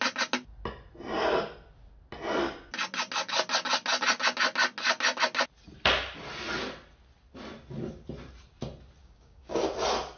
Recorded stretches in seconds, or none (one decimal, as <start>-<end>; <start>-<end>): 0.0-9.0; 9.6-10.2